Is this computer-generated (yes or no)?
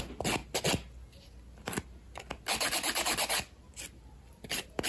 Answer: no